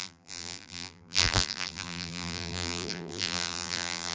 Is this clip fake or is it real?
fake